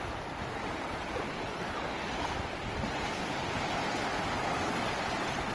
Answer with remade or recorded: recorded